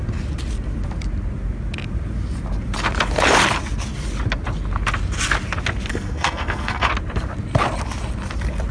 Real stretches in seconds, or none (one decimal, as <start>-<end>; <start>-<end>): 0.0-5.9; 6.9-8.7